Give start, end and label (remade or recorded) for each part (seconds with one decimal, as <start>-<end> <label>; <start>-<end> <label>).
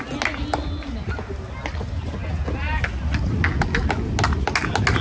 0.0-5.0 recorded